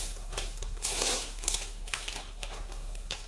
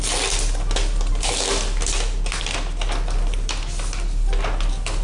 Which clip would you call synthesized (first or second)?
first